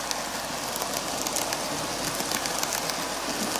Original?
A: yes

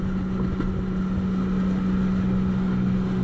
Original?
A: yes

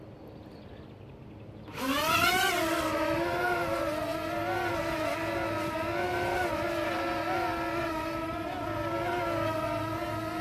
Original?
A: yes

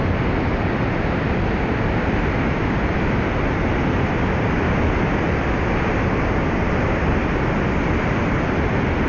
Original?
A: yes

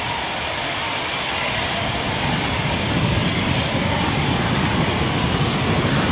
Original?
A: yes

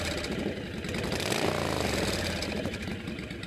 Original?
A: yes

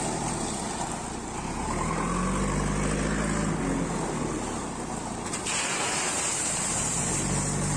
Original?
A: yes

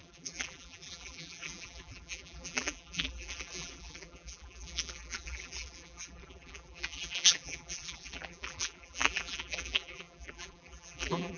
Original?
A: no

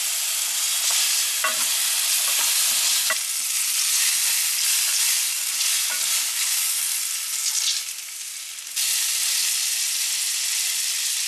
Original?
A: yes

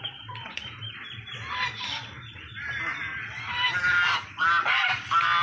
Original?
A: no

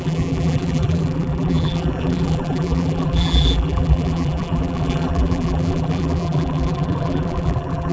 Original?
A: no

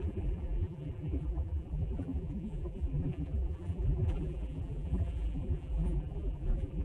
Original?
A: no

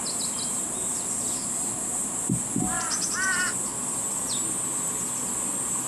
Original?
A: yes